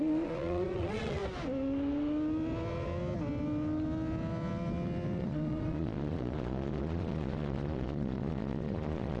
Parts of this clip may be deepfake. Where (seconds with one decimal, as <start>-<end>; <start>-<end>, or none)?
0.0-1.2; 5.2-9.2

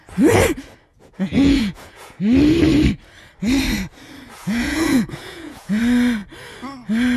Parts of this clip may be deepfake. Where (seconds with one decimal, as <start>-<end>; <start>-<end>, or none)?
0.9-2.2; 4.4-5.8